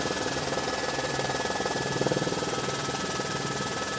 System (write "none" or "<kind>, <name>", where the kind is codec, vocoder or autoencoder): vocoder, BigVGAN v2